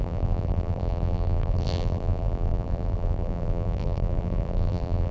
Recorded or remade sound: remade